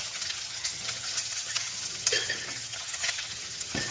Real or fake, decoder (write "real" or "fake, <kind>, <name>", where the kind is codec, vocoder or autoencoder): fake, vocoder, HiFi-GAN